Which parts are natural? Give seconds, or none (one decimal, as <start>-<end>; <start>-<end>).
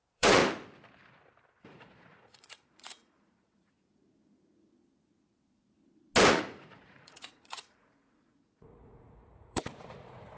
0.4-1.6; 4.2-6.3